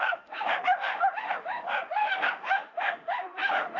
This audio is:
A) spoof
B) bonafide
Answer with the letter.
A